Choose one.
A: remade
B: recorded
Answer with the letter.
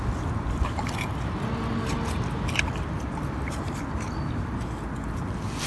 B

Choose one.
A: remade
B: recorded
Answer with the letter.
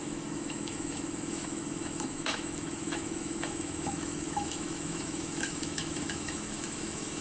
A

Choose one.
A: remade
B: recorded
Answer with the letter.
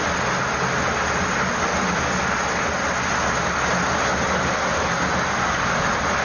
B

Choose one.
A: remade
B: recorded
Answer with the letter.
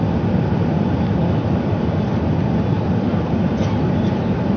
B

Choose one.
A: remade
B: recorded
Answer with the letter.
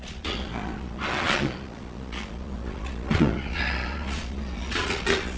A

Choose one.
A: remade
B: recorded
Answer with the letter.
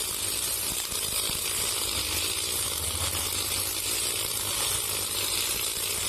B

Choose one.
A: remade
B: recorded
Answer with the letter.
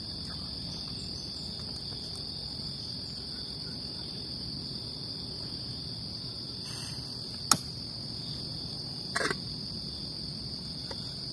B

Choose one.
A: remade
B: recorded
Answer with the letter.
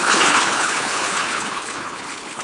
A